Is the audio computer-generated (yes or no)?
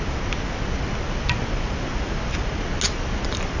no